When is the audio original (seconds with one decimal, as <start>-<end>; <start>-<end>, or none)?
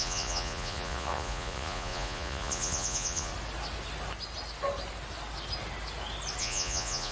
3.3-6.4